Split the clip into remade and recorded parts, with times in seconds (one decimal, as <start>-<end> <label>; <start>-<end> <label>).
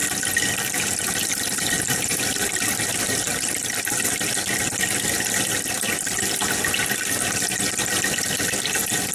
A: 0.0-9.1 recorded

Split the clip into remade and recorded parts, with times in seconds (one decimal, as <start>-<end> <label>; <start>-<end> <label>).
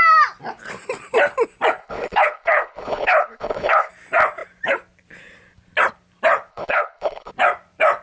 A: 0.0-1.8 recorded; 1.8-3.9 remade; 3.9-6.5 recorded; 6.5-7.3 remade; 7.3-8.0 recorded